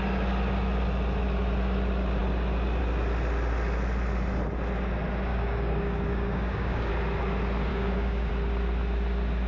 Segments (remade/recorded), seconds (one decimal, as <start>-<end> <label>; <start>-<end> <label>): 0.0-5.3 recorded; 5.3-6.9 remade; 6.9-7.7 recorded; 7.7-8.3 remade; 8.3-9.5 recorded